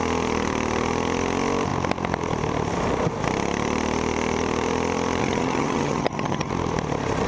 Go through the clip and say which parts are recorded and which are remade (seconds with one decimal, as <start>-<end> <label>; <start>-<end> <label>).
0.0-5.2 recorded; 5.2-6.5 remade; 6.5-7.3 recorded